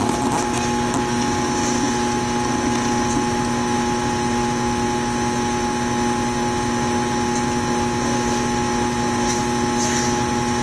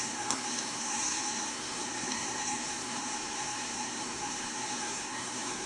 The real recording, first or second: first